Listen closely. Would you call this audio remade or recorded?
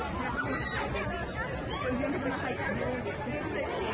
recorded